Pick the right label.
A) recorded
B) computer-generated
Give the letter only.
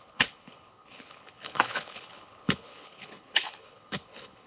B